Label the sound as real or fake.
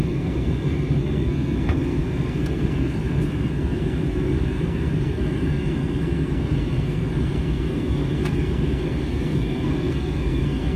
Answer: fake